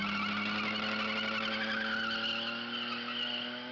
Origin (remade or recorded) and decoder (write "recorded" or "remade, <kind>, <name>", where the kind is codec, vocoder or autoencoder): recorded